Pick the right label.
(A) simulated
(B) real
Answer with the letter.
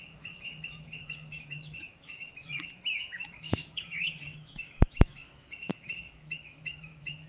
A